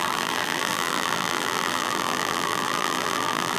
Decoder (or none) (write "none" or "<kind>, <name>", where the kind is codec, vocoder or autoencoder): vocoder, BigVGAN v2